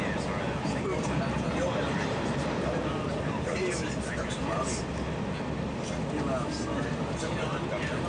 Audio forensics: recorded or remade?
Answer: recorded